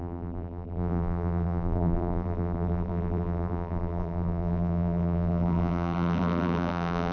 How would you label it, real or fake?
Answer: fake